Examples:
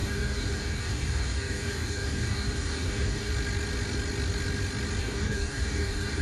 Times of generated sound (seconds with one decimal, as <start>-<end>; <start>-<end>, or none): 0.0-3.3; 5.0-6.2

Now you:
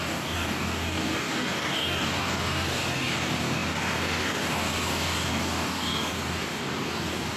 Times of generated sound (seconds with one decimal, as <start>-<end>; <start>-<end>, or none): 0.0-7.4

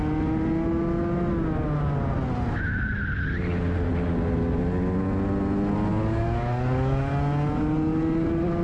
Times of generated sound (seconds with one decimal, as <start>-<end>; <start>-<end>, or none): 5.9-7.1